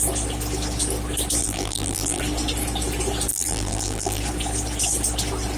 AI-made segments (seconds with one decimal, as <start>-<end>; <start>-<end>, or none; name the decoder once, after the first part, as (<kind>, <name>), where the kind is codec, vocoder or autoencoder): 1.4-2.2 (vocoder, BigVGAN v2); 3.3-4.2